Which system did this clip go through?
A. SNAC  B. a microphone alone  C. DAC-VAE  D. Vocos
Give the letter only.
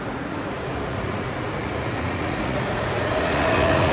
D